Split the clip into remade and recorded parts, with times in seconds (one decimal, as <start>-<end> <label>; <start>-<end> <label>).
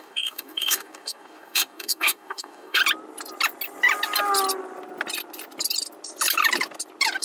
0.0-2.8 remade; 2.8-7.2 recorded